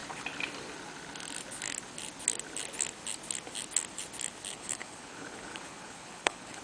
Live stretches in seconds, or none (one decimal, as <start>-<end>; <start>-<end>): 0.0-4.5

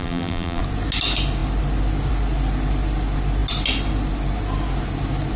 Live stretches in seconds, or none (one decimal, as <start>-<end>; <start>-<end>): 0.6-5.4

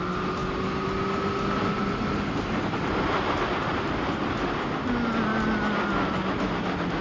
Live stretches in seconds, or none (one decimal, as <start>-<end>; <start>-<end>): 0.0-7.0

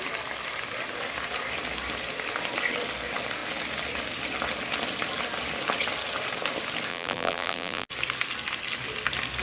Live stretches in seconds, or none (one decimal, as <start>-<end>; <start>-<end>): 0.0-6.9; 7.9-9.4

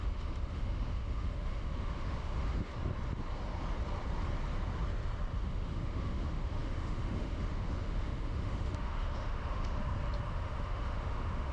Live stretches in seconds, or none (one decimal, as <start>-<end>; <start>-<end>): 2.7-5.3; 9.8-10.3

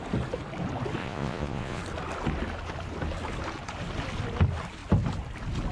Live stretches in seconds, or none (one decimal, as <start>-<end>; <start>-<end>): 0.0-1.0; 1.8-5.7

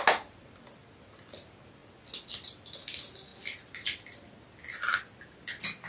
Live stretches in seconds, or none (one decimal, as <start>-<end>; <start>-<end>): 0.0-5.9

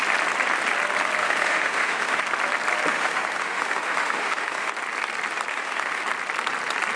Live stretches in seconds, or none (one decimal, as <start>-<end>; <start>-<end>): 0.0-1.2; 2.2-2.9; 4.7-5.5; 6.0-7.0